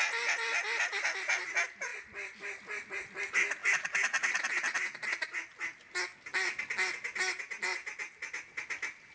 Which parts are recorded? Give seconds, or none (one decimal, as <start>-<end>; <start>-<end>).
0.0-9.1